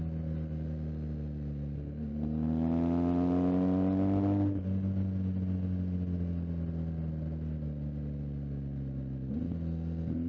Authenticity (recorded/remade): recorded